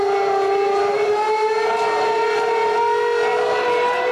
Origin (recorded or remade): recorded